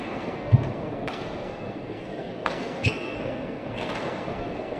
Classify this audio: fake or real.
fake